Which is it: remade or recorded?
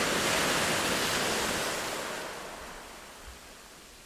recorded